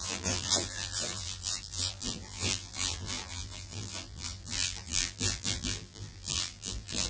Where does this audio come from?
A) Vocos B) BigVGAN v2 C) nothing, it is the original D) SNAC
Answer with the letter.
B